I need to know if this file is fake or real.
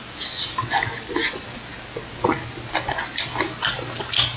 real